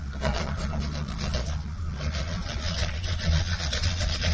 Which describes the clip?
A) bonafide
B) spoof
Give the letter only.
B